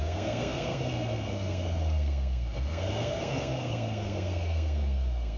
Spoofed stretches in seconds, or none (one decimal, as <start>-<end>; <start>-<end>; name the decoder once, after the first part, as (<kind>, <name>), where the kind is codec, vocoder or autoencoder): 0.0-5.4 (codec, SNAC)